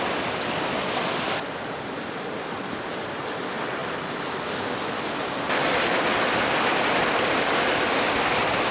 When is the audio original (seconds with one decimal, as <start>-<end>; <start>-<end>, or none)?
0.0-8.7